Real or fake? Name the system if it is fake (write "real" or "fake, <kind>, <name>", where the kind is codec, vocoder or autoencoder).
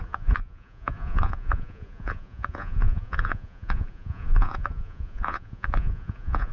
fake, vocoder, Vocos